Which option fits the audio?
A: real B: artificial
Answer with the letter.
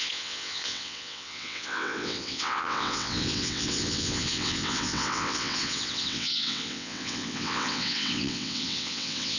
B